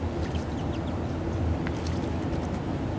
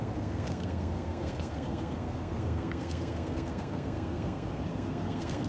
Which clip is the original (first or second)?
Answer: first